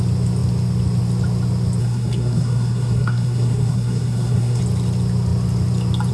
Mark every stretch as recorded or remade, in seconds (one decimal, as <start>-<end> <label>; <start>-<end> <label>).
0.0-1.8 recorded; 1.8-4.6 remade; 4.6-6.1 recorded